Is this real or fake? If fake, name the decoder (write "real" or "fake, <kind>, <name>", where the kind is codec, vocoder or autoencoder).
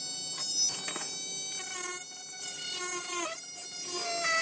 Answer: real